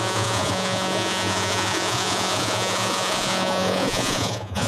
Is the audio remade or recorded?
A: remade